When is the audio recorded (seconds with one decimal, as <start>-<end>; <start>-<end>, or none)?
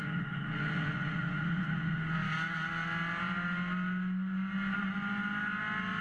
2.2-6.0